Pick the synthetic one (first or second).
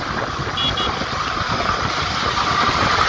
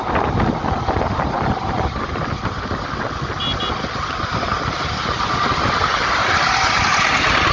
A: first